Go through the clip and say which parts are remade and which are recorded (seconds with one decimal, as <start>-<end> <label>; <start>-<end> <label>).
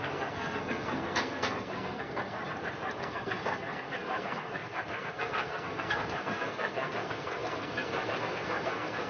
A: 0.0-2.4 remade; 2.4-3.0 recorded; 3.0-9.1 remade